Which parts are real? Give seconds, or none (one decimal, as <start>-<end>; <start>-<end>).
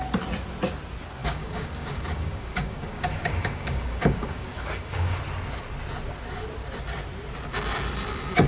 0.0-1.2; 5.2-8.5